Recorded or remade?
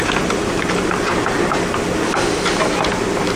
recorded